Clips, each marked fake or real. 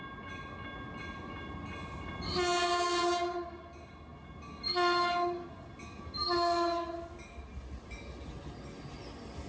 real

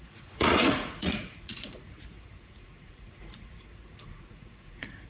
fake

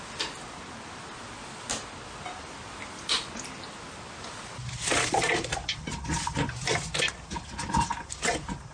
real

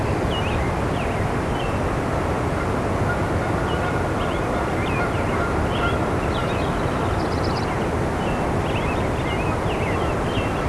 real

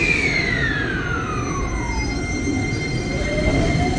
real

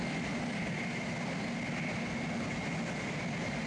real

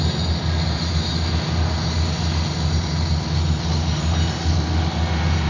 real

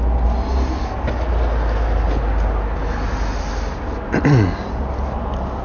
real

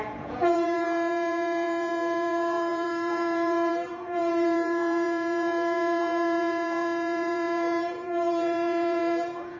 fake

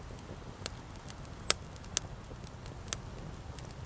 real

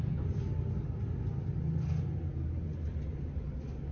real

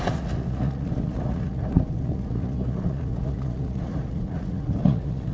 fake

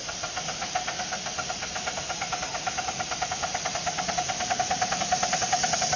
real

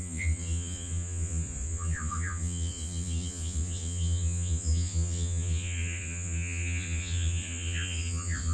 fake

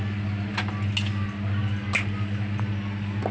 real